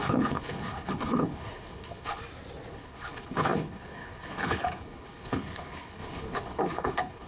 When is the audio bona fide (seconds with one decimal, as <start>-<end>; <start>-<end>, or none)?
2.2-2.7